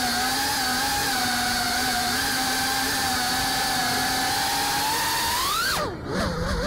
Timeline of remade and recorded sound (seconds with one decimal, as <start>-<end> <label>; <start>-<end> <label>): 0.0-1.0 recorded; 1.0-3.3 remade; 3.3-6.7 recorded